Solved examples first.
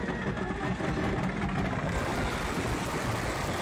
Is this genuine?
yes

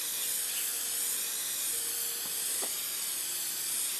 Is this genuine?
yes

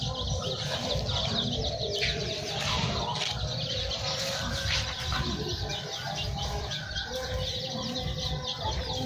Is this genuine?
yes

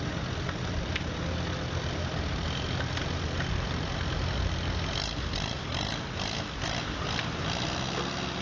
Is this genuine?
yes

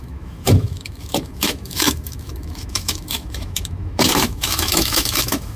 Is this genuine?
no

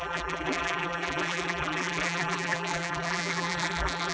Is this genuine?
no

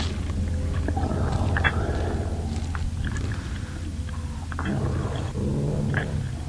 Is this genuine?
yes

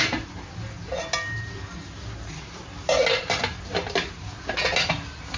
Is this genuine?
yes